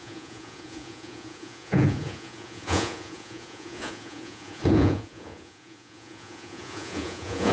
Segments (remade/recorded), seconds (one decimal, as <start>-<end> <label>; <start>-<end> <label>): 0.0-7.5 remade